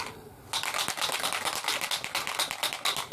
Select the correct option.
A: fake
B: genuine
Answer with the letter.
B